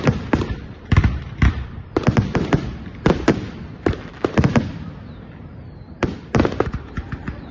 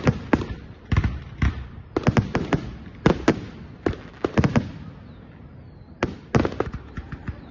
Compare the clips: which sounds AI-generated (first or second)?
first